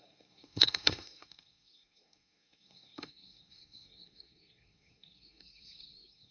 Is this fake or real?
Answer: fake